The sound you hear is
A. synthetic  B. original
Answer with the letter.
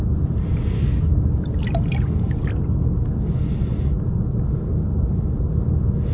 B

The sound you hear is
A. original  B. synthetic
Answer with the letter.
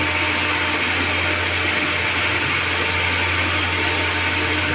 A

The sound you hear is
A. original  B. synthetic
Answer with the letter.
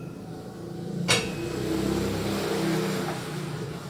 A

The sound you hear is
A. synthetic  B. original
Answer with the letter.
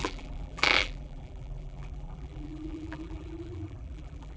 A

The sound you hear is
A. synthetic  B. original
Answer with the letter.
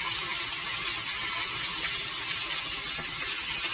B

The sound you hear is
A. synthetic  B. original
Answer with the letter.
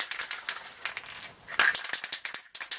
B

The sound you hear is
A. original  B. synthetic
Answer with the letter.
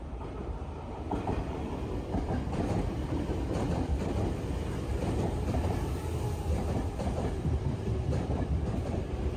B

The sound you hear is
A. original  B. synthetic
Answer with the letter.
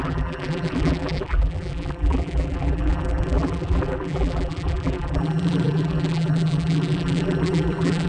B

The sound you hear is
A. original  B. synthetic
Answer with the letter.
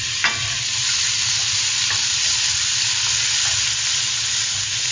A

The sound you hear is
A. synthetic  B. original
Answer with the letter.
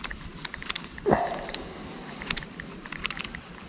A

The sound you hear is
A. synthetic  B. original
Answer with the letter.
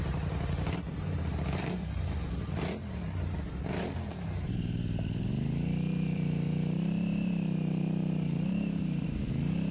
A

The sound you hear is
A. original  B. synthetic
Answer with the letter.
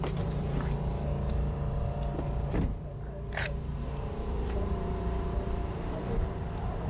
B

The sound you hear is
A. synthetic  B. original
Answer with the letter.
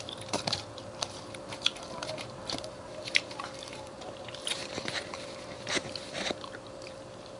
A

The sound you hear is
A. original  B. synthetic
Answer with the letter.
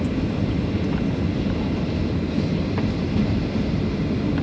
A